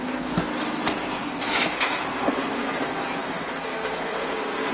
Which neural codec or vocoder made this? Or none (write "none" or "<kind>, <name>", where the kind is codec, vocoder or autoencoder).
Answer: codec, SNAC